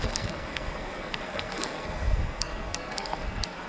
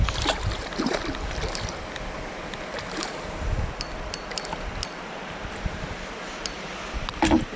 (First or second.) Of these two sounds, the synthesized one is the first